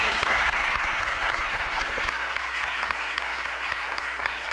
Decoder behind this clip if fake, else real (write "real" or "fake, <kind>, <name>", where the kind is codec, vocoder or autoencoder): fake, codec, SNAC